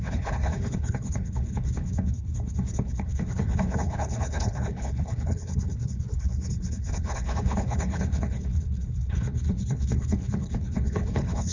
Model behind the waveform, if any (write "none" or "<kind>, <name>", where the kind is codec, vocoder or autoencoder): codec, HILCodec